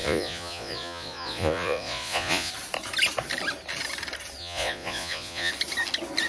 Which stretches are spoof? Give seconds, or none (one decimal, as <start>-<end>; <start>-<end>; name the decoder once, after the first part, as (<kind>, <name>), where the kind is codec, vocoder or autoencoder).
0.0-2.5 (vocoder, Vocos); 4.4-5.5